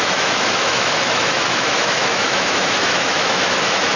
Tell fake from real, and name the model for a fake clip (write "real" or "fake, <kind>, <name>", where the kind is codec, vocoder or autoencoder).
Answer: fake, autoencoder, DAC-VAE